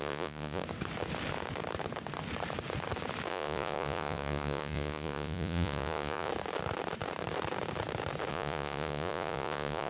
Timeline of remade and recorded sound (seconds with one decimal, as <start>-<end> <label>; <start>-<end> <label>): 0.0-0.6 remade; 0.6-3.3 recorded; 3.3-6.3 remade; 6.3-8.3 recorded; 8.3-9.9 remade